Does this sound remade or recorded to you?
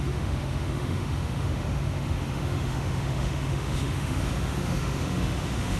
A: remade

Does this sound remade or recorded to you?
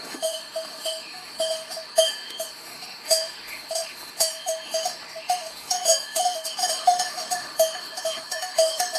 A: remade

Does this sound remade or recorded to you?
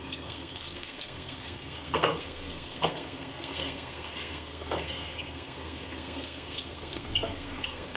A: remade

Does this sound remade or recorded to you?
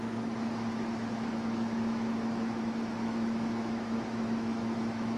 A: remade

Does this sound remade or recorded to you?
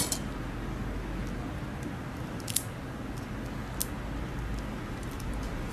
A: recorded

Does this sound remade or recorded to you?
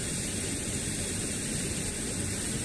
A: recorded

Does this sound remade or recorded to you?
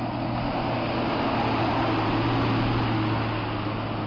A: recorded